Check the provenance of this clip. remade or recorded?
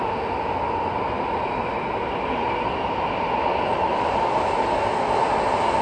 recorded